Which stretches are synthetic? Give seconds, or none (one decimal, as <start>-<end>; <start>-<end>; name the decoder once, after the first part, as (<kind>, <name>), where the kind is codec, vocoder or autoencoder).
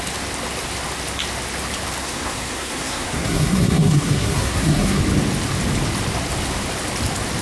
2.0-5.0 (codec, SNAC)